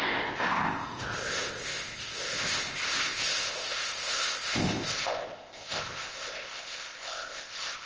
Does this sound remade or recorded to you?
remade